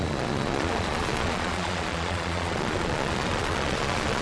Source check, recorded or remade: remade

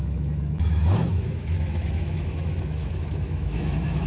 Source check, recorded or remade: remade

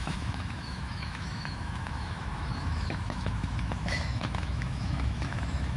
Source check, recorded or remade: remade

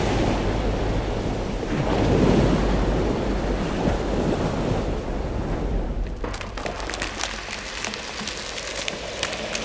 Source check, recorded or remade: recorded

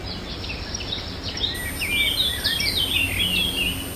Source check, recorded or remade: recorded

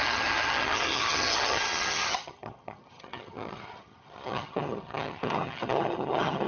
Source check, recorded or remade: remade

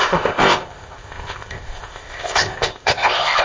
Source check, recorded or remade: remade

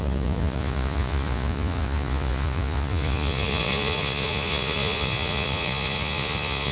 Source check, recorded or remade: remade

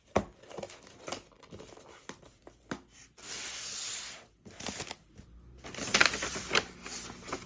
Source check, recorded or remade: recorded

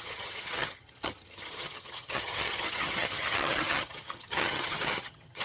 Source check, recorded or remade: remade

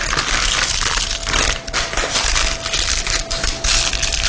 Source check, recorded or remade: recorded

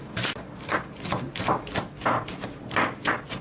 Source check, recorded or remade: recorded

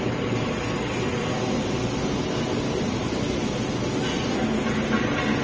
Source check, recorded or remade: recorded